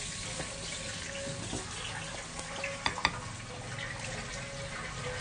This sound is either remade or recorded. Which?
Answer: recorded